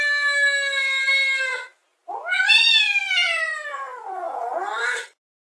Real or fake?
real